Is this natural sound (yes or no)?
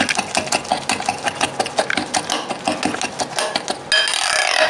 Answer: yes